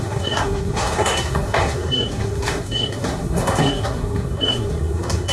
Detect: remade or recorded remade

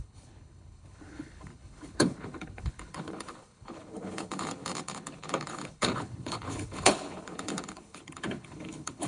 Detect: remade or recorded remade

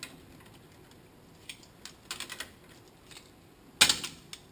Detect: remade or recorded recorded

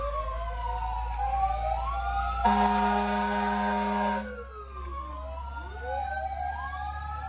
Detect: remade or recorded recorded